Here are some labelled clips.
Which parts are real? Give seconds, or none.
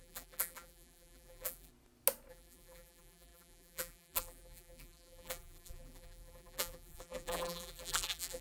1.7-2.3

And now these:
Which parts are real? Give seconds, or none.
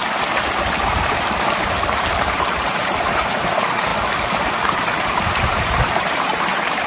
0.0-0.9